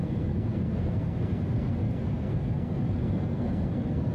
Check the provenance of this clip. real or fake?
fake